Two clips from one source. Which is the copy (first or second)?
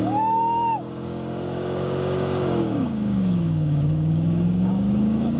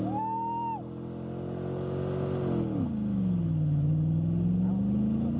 first